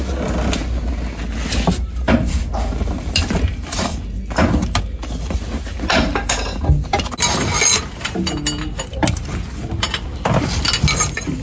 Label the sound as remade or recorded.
recorded